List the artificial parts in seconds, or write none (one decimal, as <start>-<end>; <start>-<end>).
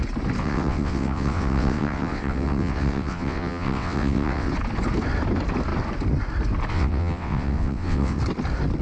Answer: 0.4-4.5; 6.7-8.2